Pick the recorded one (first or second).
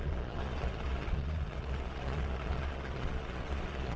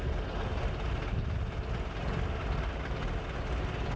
second